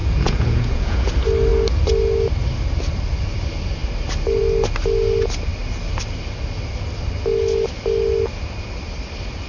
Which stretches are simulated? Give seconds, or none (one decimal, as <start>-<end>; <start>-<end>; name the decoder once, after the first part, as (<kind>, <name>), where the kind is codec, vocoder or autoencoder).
0.0-1.1 (vocoder, Vocos)